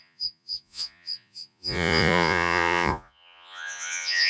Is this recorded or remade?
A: remade